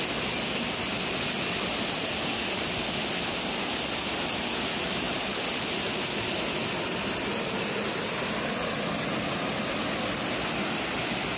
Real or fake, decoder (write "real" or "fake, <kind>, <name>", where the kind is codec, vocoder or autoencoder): real